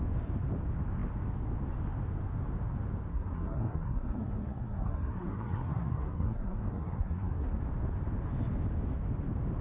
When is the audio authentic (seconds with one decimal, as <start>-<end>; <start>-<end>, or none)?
0.0-3.1; 7.6-9.6